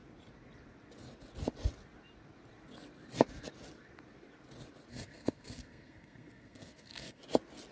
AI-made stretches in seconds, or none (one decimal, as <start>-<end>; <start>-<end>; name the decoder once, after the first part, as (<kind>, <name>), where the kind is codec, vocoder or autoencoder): 4.9-7.2 (codec, SNAC)